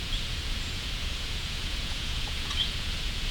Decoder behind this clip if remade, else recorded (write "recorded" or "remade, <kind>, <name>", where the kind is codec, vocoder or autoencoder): remade, vocoder, Vocos